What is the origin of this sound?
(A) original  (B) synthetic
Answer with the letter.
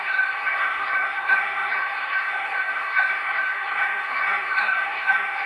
B